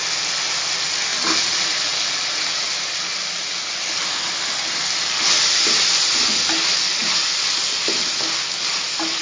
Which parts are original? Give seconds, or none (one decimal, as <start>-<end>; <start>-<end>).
0.0-9.2